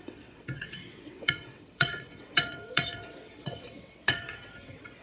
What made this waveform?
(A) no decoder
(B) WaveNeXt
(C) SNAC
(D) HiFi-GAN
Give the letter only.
B